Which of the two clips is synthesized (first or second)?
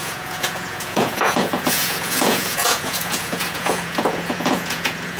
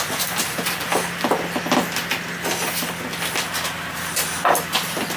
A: first